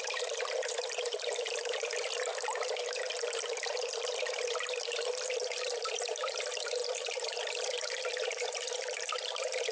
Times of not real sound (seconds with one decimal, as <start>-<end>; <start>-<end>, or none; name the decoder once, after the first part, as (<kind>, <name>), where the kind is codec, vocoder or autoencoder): 0.0-2.3 (vocoder, BigVGAN v2); 3.5-9.7